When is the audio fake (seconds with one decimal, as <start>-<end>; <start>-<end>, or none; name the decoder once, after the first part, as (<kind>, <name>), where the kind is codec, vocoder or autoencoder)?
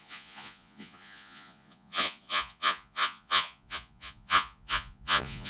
0.0-5.5 (vocoder, Vocos)